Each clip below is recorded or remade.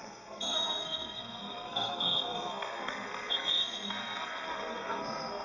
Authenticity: remade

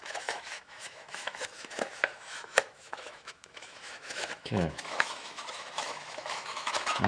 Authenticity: remade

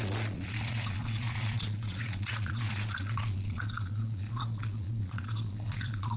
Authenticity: remade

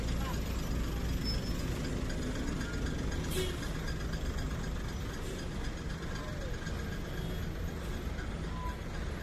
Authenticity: recorded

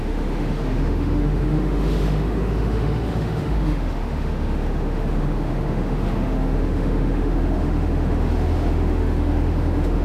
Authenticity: remade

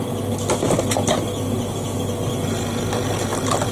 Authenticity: recorded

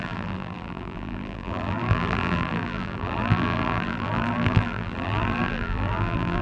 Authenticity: remade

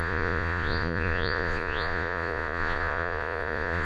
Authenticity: remade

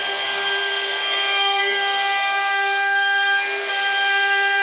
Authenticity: remade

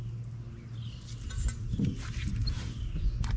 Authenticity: recorded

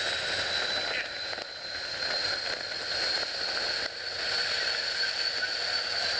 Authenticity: recorded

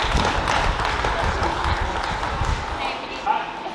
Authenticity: recorded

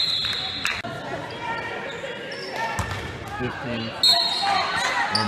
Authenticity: recorded